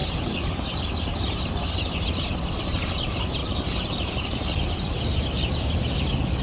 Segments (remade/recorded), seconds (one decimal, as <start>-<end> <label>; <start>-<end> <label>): 0.0-1.4 remade; 1.4-3.4 recorded; 3.4-5.5 remade; 5.5-6.4 recorded